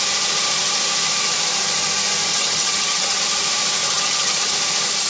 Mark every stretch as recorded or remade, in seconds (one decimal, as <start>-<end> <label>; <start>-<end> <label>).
0.0-2.3 recorded; 2.3-3.2 remade; 3.2-3.8 recorded; 3.8-4.5 remade; 4.5-5.1 recorded